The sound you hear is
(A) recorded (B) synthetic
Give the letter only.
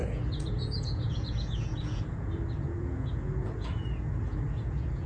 B